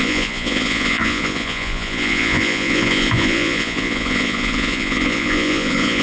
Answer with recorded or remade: remade